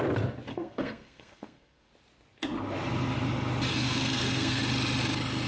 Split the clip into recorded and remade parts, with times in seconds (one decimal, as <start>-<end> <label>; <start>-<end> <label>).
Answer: 0.0-0.5 recorded; 0.5-1.9 remade; 1.9-3.7 recorded; 3.7-4.6 remade; 4.6-5.5 recorded